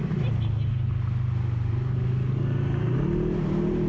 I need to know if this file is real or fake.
real